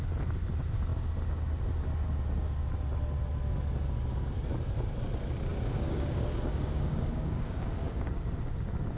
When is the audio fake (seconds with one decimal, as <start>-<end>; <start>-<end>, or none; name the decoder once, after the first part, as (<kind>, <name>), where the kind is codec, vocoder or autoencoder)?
5.5-8.1 (codec, DAC)